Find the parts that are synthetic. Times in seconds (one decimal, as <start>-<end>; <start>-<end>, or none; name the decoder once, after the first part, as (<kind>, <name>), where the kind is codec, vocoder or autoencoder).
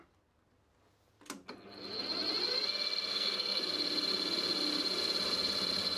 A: 3.1-3.7 (codec, SNAC)